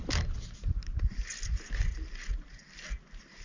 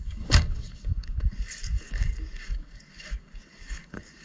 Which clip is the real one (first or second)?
first